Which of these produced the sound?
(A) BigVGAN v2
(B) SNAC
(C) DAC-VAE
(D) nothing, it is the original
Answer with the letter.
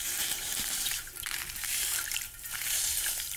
A